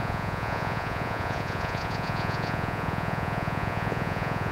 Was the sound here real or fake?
fake